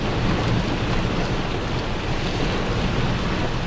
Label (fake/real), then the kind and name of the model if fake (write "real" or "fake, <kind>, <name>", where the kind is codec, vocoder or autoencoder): real